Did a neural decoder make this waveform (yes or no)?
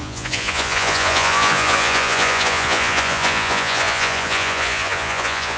yes